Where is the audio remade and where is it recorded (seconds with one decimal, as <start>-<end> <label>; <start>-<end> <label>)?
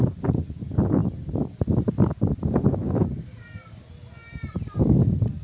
0.0-5.4 recorded